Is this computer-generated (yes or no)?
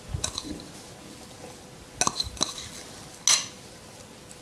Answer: no